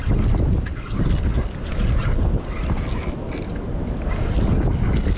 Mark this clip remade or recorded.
recorded